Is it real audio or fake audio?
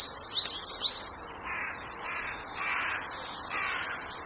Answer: real